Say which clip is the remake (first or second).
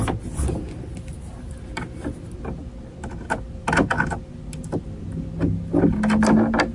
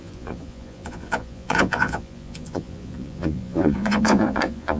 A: second